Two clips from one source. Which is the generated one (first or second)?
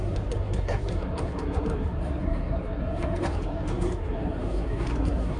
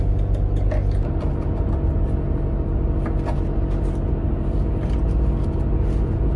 first